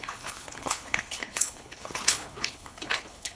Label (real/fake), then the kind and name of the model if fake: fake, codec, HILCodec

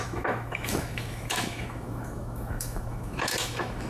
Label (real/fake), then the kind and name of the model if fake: fake, autoencoder, DAC-VAE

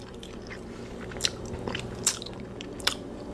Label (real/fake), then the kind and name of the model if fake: fake, vocoder, BigVGAN v2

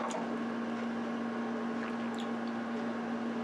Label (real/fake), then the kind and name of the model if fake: real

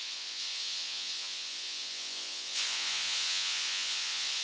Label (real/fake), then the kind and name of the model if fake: fake, vocoder, Vocos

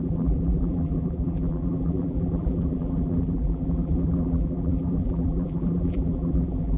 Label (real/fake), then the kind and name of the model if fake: fake, vocoder, BigVGAN v2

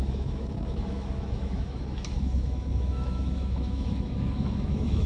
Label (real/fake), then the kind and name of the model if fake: fake, autoencoder, DAC-VAE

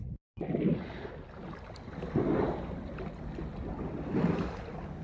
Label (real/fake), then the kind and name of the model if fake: real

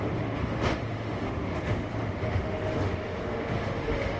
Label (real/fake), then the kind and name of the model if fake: fake, autoencoder, DAC-VAE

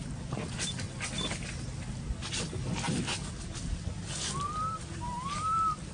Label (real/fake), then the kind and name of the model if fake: real